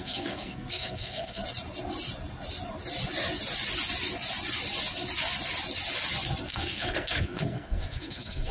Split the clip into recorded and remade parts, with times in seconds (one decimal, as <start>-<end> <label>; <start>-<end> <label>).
0.0-1.4 remade; 1.4-6.5 recorded; 6.5-8.5 remade